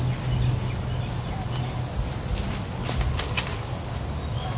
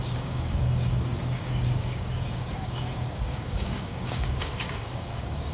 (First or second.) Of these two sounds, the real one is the first